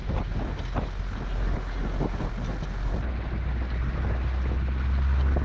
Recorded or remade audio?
recorded